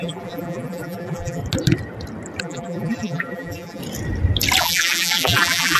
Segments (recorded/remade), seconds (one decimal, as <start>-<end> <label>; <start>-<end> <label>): 0.0-1.4 remade; 1.4-2.4 recorded; 2.4-3.8 remade; 3.8-4.6 recorded; 4.6-5.8 remade